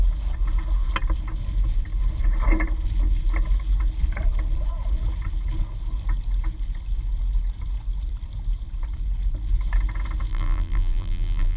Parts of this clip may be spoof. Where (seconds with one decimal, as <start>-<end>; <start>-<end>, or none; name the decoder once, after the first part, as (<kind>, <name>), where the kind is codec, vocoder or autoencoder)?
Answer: 10.3-11.6 (vocoder, BigVGAN v2)

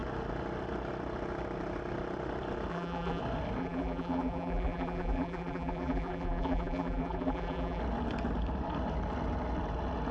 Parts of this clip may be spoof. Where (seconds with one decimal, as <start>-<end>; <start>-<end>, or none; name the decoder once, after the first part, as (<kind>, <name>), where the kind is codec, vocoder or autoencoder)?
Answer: 2.7-3.2 (vocoder, BigVGAN v2); 3.6-7.8

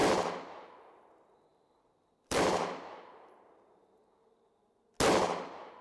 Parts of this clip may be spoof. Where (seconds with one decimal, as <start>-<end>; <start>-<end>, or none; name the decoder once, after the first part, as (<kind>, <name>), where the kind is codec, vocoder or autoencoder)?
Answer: 1.5-3.3 (vocoder, BigVGAN v2)

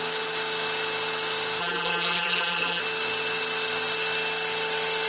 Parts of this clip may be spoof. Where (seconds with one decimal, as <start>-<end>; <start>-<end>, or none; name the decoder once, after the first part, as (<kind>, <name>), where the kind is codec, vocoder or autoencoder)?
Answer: 1.6-2.8 (vocoder, BigVGAN v2)

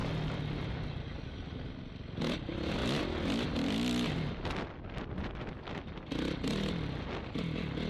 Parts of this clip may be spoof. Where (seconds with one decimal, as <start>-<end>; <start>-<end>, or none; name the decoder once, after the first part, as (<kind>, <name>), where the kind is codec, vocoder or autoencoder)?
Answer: none

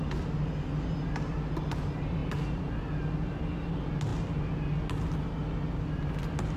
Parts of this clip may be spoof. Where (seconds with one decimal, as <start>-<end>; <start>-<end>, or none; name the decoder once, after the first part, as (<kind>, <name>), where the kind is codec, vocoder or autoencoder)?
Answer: none

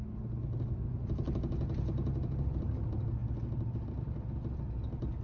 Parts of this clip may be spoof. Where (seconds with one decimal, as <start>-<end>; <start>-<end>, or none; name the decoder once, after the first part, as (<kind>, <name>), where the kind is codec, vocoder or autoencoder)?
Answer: none